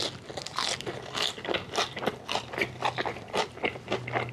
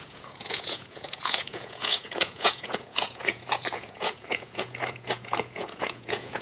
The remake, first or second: second